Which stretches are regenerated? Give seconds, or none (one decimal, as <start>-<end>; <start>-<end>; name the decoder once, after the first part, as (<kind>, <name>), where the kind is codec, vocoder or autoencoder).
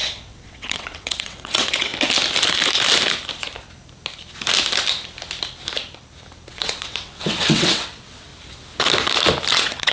0.0-1.9 (vocoder, WaveNeXt); 6.5-8.3; 9.5-9.9